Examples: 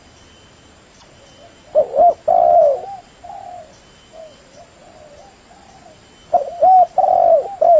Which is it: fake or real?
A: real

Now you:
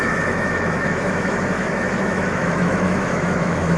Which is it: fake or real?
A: fake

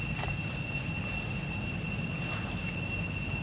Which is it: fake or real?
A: real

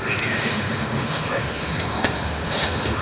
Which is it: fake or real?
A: fake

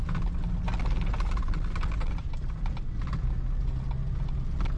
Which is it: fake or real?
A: real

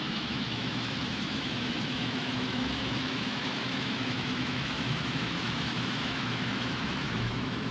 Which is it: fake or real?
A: fake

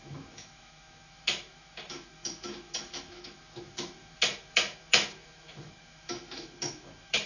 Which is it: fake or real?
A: fake